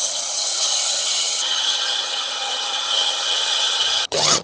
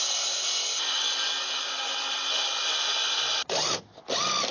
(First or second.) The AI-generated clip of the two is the first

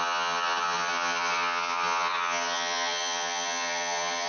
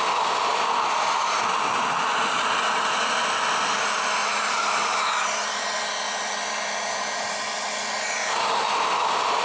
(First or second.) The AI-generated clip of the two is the first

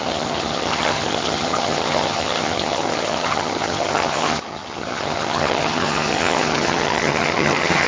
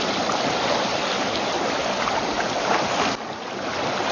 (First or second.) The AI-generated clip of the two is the first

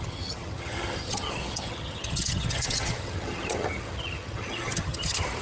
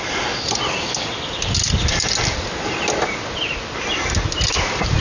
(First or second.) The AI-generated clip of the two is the first